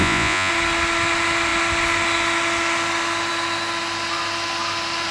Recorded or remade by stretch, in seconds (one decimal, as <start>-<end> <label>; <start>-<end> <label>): 0.0-0.5 remade; 0.5-5.1 recorded